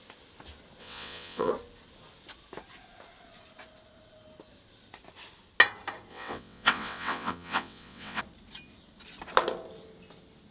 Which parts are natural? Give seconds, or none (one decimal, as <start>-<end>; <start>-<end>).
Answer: 0.0-0.8; 1.5-6.1; 8.2-10.5

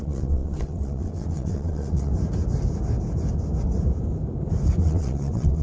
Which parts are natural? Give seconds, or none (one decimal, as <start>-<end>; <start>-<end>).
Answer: 2.1-4.8

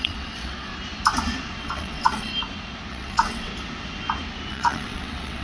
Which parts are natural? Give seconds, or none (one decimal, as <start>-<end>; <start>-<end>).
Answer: 0.7-1.6; 2.3-2.9; 3.5-4.5